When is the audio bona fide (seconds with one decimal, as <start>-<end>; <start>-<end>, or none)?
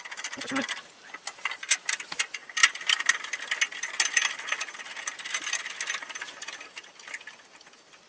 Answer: 0.0-8.1